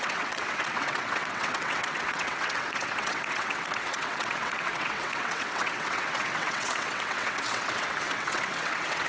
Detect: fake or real fake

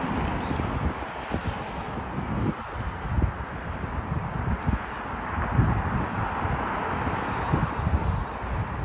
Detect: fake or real real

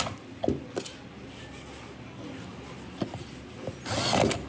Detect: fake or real real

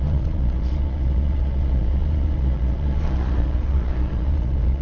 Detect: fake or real fake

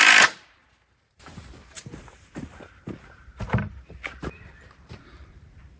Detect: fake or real fake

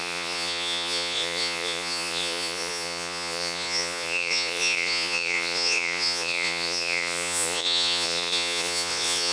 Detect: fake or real fake